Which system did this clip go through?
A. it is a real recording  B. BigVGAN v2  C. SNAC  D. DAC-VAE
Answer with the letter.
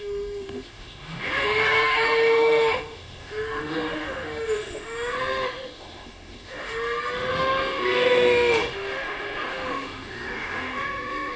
D